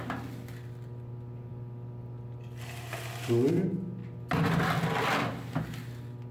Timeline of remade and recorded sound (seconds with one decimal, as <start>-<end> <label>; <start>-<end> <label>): 0.0-4.0 remade; 4.0-5.6 recorded; 5.6-6.3 remade